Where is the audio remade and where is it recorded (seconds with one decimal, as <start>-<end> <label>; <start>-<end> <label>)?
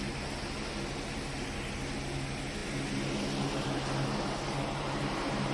0.0-5.5 recorded